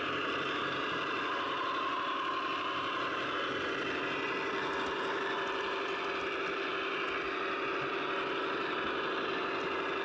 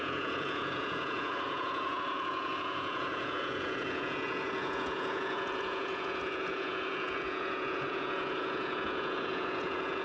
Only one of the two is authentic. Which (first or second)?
first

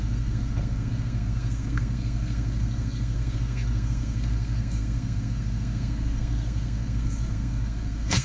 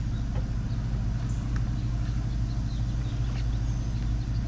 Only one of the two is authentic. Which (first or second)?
second